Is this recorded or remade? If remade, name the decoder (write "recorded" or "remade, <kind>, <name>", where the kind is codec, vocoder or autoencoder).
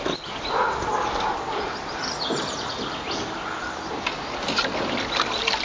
recorded